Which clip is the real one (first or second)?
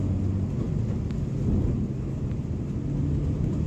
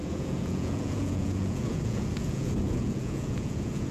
first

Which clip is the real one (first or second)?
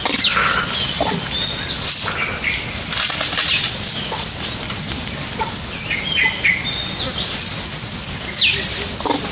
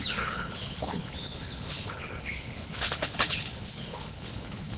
first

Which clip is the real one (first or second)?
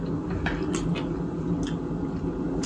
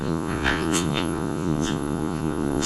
first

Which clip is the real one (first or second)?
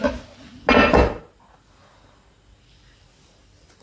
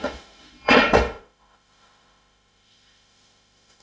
first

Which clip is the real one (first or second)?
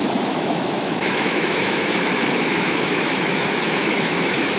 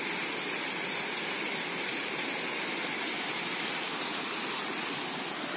second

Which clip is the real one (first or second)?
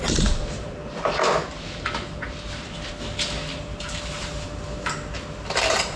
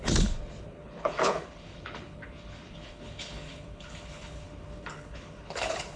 first